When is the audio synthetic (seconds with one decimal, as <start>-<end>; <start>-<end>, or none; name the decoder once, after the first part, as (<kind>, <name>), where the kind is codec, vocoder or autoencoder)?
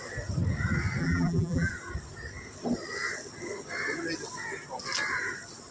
1.0-1.7 (vocoder, BigVGAN v2)